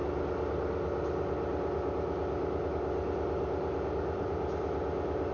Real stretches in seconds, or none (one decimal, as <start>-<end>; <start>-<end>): 0.0-5.3

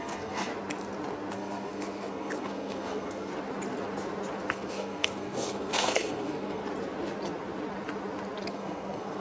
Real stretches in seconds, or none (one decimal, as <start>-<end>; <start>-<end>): 0.5-1.3; 3.3-4.5; 6.6-8.5

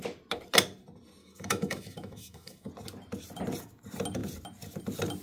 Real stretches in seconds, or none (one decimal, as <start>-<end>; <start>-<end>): 0.0-1.2; 2.7-5.2

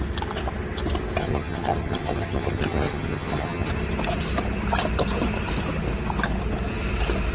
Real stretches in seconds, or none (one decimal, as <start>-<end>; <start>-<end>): 0.0-1.2; 3.7-7.3

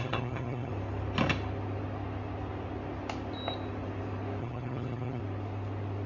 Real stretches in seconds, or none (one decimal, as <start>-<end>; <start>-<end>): 0.7-4.4; 5.2-6.1

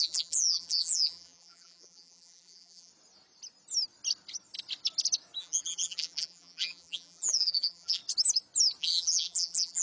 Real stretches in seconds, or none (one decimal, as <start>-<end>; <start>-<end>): 2.9-5.4; 8.0-8.8

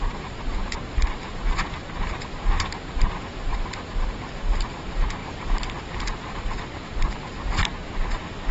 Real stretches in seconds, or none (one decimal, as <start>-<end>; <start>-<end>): none

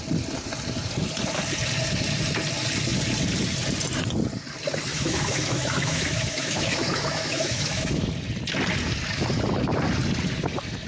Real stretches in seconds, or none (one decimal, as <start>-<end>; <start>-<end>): 0.0-4.9; 8.1-10.9